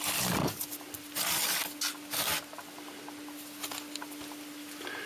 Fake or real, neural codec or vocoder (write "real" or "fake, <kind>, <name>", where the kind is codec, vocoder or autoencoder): real